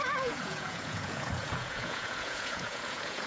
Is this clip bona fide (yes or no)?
no